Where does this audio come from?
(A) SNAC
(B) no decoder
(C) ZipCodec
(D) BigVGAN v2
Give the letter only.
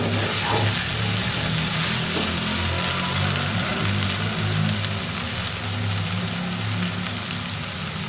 B